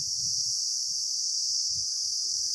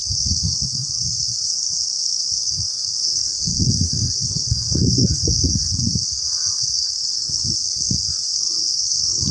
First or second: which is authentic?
first